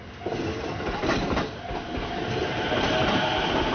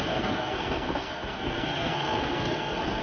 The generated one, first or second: second